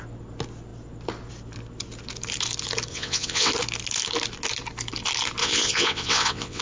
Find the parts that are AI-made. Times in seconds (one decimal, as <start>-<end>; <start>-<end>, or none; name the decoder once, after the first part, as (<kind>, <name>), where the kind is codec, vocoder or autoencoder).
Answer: 2.9-3.5 (vocoder, WaveNeXt); 5.4-6.6